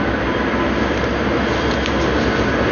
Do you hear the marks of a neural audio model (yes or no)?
no